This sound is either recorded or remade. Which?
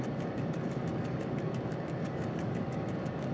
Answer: remade